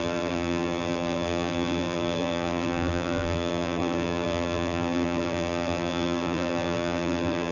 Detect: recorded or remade remade